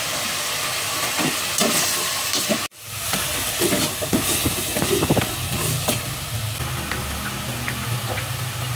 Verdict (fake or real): real